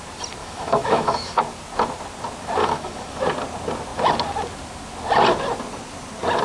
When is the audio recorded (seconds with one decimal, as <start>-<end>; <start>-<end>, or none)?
0.0-0.4; 1.4-2.6; 3.2-6.4